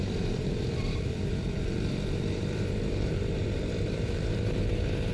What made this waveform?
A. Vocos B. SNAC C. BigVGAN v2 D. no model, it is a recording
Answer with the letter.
C